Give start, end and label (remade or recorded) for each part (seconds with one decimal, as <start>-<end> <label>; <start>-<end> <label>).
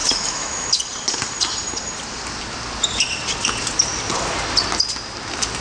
0.0-0.8 remade; 0.8-5.6 recorded